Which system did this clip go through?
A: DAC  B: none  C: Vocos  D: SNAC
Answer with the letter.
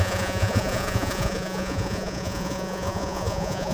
C